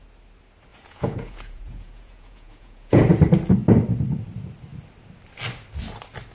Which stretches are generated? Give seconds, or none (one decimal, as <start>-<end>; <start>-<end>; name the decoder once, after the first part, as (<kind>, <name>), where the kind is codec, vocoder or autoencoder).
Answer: 0.7-3.0 (vocoder, Vocos)